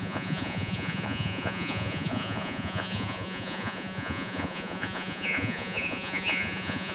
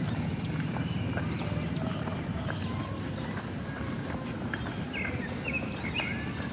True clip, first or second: second